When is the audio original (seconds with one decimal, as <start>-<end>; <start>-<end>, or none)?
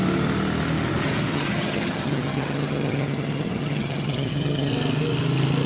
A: 0.0-1.3; 4.7-5.7